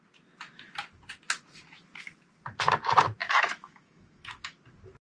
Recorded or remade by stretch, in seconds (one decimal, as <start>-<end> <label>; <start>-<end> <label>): 0.0-3.2 recorded; 3.2-4.6 remade; 4.6-5.1 recorded